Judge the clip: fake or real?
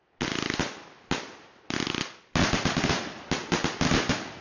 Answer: real